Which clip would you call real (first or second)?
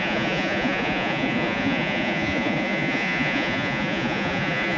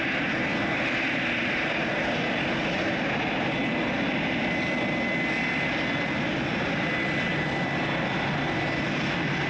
second